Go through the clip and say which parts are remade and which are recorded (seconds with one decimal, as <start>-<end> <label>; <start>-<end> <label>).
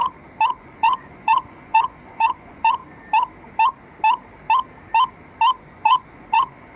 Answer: 0.0-0.6 recorded; 0.6-2.8 remade; 2.8-5.6 recorded; 5.6-6.8 remade